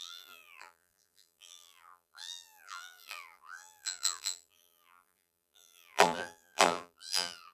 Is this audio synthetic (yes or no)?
yes